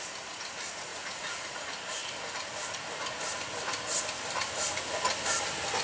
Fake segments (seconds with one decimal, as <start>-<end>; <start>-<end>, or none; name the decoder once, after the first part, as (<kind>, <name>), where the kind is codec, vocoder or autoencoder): 0.9-1.6 (vocoder, Vocos)